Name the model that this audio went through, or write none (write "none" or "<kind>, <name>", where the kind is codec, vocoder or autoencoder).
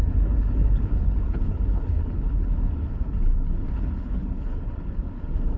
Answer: codec, HILCodec